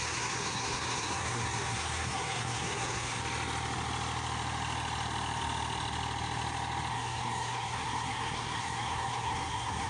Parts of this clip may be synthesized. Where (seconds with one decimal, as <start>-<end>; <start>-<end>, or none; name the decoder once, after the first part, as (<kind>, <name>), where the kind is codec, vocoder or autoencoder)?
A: 0.0-3.2 (codec, SNAC); 6.9-9.9